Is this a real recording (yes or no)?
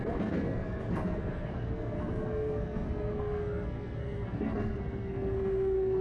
no